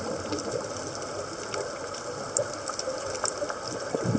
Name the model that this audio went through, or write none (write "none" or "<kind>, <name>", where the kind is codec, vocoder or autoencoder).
none